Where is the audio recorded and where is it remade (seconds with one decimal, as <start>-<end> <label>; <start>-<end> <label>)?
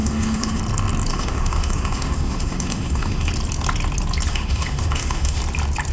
0.0-0.6 remade; 0.6-1.1 recorded; 1.1-3.3 remade; 3.3-4.3 recorded; 4.3-5.4 remade; 5.4-5.9 recorded